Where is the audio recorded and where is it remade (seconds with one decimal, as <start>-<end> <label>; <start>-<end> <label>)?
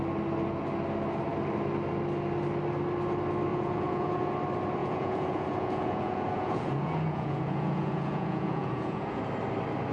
0.0-3.5 recorded; 3.5-4.3 remade; 4.3-4.8 recorded; 4.8-9.2 remade; 9.2-9.9 recorded